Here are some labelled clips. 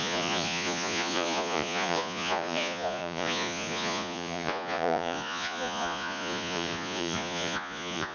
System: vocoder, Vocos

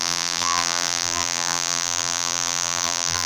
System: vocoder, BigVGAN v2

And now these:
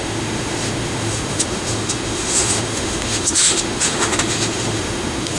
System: autoencoder, DAC-VAE